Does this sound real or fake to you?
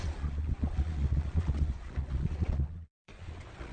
fake